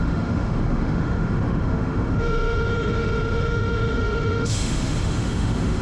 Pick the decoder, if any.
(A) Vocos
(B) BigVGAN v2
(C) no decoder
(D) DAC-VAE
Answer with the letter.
D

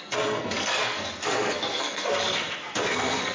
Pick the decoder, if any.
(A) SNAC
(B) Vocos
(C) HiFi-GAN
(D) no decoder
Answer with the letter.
A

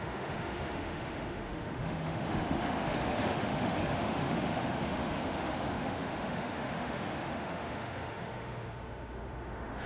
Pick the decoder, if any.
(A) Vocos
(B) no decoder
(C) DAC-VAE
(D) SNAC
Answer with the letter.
C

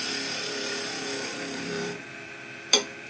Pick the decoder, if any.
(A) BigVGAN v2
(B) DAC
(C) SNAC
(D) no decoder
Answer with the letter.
A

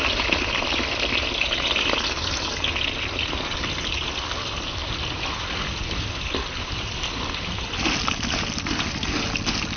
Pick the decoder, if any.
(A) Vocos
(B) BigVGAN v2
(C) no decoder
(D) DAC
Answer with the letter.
C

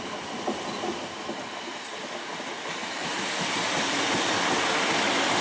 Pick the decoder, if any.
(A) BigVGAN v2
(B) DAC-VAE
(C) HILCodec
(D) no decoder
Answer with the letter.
D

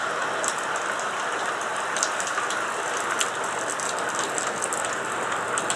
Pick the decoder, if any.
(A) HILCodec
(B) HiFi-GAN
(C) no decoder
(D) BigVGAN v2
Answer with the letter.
C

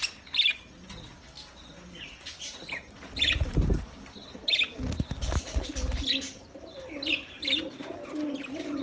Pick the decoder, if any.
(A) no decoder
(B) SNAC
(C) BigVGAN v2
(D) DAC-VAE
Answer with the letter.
A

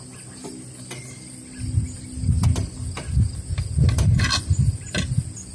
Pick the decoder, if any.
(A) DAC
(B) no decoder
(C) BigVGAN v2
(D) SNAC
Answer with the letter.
B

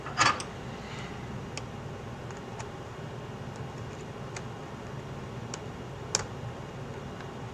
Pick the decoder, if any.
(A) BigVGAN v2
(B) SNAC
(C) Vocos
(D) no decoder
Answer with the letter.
D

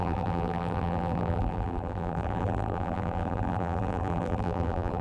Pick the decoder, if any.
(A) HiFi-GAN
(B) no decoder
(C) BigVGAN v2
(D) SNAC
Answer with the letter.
C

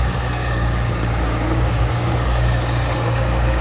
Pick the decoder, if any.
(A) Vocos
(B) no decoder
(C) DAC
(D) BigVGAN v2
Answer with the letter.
C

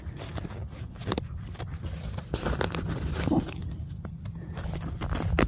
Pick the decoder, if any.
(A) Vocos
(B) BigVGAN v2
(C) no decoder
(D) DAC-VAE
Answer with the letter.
C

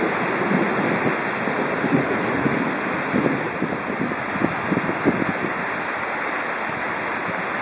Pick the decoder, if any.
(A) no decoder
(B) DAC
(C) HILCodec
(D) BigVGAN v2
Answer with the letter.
A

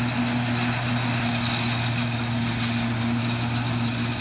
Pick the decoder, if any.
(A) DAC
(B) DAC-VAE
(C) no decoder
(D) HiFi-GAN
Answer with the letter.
C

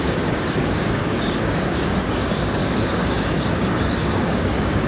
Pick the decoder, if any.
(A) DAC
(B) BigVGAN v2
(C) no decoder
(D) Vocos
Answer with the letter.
A